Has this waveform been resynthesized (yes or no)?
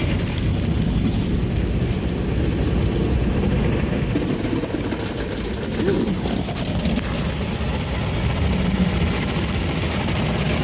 no